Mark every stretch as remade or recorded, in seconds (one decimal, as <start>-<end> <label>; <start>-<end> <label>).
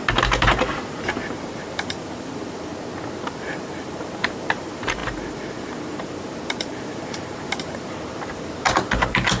0.0-2.7 remade; 2.7-3.3 recorded; 3.3-9.4 remade